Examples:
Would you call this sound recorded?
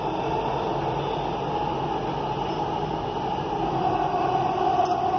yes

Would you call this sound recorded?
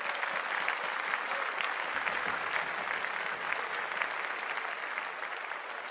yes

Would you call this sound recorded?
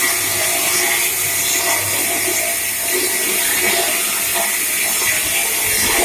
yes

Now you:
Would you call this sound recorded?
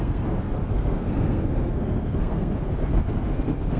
no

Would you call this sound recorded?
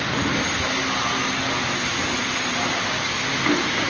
yes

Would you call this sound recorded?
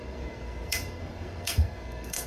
no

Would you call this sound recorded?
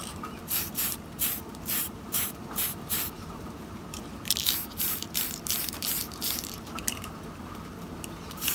no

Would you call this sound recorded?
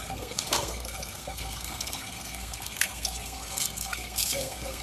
no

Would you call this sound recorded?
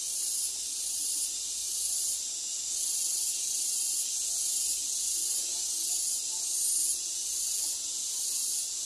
yes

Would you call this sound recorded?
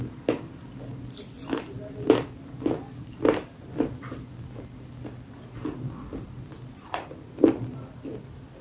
yes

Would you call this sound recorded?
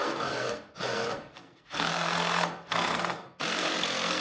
no